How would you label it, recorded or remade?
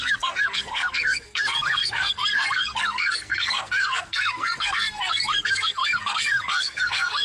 remade